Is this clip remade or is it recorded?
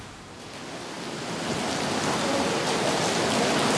recorded